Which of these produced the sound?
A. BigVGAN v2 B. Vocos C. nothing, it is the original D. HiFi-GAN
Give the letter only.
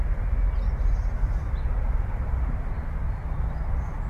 C